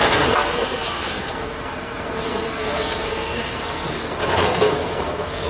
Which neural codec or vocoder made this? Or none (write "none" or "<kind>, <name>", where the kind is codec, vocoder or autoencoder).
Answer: codec, SNAC